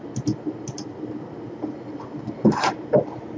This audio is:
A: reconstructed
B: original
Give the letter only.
B